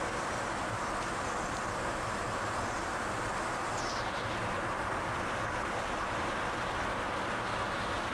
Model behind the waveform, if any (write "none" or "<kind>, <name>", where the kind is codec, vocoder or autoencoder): none